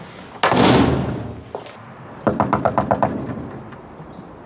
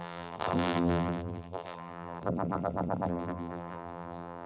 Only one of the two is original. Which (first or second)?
first